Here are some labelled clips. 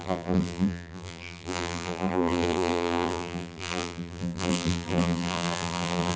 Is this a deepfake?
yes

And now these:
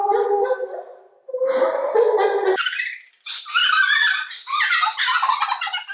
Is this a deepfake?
no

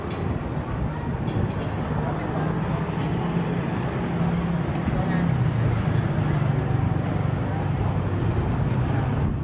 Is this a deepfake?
no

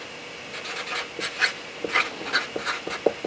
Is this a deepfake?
no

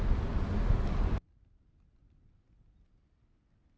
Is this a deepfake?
no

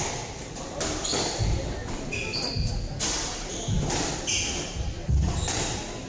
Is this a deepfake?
no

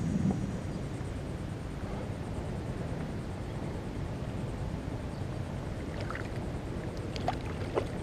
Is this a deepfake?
yes